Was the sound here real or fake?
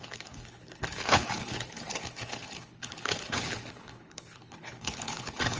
fake